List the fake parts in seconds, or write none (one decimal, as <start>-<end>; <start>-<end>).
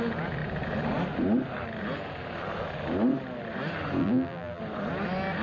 4.0-4.6